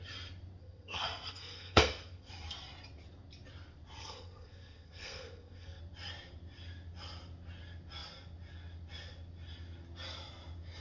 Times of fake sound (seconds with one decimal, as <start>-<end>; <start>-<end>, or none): 0.6-2.3; 4.0-5.8